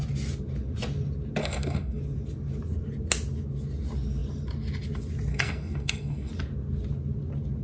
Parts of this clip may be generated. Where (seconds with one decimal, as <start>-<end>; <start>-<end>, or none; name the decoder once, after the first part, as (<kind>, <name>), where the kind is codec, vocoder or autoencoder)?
1.4-2.0 (codec, SNAC); 5.3-6.3